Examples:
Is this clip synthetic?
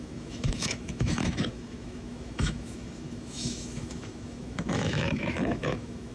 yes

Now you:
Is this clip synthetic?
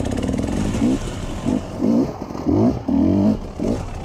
no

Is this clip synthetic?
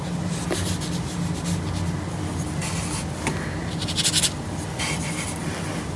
no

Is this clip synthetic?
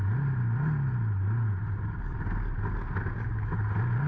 no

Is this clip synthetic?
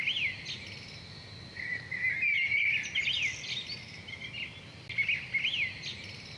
no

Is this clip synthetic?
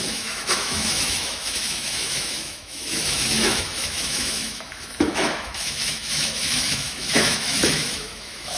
yes